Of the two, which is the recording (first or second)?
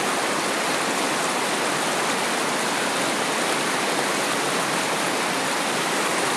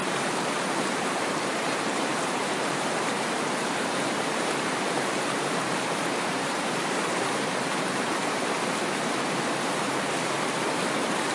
first